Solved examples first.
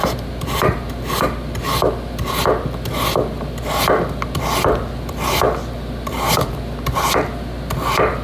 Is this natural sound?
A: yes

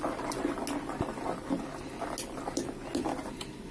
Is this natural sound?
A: yes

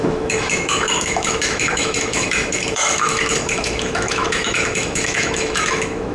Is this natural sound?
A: no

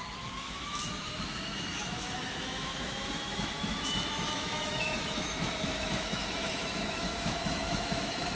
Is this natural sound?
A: no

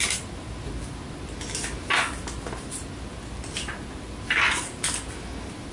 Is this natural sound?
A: yes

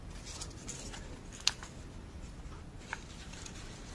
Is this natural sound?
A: yes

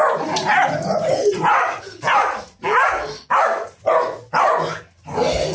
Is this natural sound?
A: yes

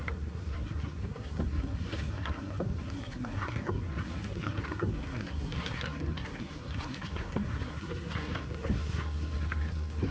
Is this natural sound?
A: no